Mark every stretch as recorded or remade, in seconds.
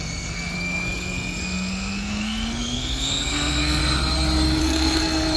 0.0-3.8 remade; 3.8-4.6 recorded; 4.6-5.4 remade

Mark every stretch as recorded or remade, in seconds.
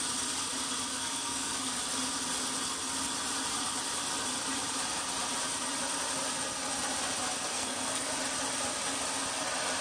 0.0-0.9 recorded; 0.9-1.8 remade; 1.8-7.5 recorded; 7.5-8.1 remade; 8.1-9.8 recorded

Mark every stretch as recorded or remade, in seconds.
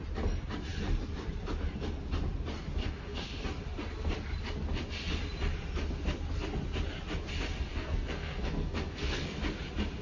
0.0-2.8 recorded; 2.8-3.4 remade; 3.4-7.7 recorded; 7.7-9.4 remade; 9.4-10.0 recorded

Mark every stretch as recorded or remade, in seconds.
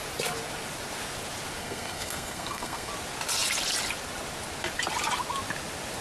0.0-1.6 recorded; 1.6-2.9 remade; 2.9-6.0 recorded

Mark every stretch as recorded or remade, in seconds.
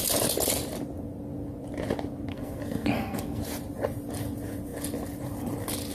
0.0-2.3 recorded; 2.3-3.4 remade; 3.4-5.9 recorded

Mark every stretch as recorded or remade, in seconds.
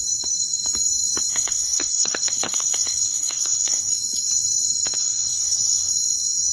0.0-1.3 recorded; 1.3-3.9 remade; 3.9-5.0 recorded; 5.0-5.9 remade; 5.9-6.5 recorded